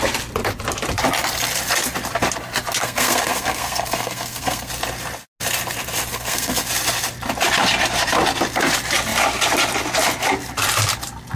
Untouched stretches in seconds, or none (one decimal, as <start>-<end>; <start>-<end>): 0.0-2.8; 4.7-6.1; 6.7-11.4